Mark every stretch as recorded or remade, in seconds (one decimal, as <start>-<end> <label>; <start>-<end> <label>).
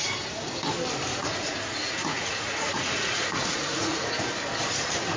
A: 0.0-1.1 recorded; 1.1-4.1 remade; 4.1-5.2 recorded